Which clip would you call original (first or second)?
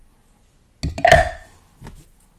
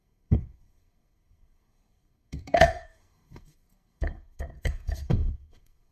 first